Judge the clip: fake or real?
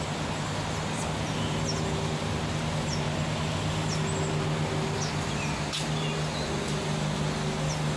real